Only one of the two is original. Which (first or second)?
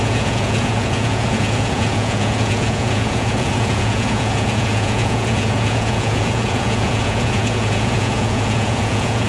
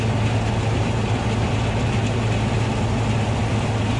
second